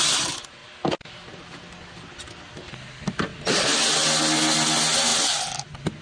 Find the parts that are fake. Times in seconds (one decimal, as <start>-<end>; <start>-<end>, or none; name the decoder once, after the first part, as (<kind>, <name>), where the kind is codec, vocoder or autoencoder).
none